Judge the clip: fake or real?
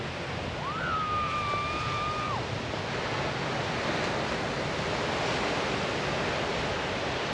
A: real